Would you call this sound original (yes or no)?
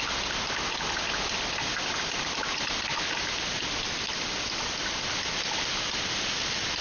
yes